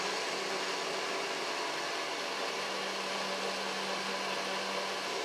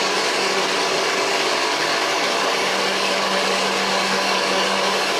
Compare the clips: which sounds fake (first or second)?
second